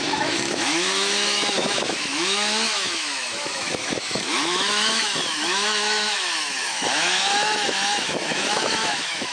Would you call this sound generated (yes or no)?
yes